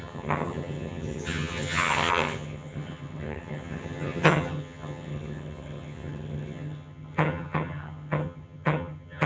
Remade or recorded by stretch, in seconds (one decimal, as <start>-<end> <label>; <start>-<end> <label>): 0.0-9.3 remade